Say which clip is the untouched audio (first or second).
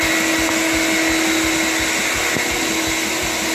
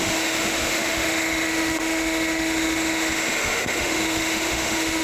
first